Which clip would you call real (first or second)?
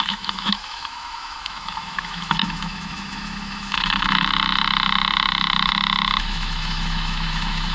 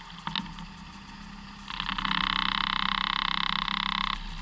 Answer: second